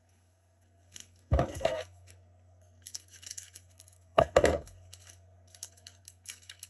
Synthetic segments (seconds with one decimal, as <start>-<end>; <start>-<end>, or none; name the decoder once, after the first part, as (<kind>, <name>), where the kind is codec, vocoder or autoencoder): 0.0-6.7 (codec, SNAC)